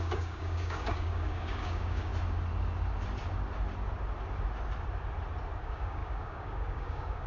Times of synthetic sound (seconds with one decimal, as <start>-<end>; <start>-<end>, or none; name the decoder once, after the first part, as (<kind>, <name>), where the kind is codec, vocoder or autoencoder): 0.0-2.1 (codec, DAC); 5.6-7.3